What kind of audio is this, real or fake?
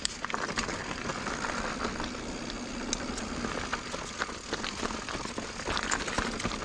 real